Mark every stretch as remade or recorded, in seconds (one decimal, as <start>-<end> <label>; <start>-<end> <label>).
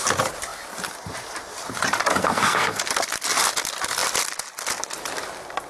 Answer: 0.0-2.1 recorded; 2.1-2.8 remade; 2.8-5.7 recorded